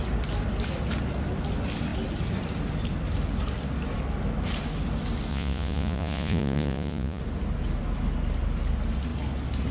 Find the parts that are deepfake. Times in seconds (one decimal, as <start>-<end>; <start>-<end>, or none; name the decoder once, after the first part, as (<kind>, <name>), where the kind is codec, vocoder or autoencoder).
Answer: 5.3-7.2 (vocoder, Vocos)